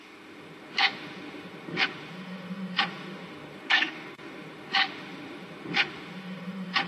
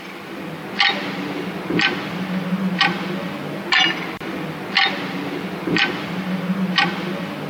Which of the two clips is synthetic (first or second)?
first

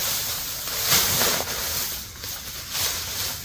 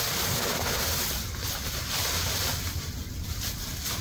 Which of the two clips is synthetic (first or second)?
second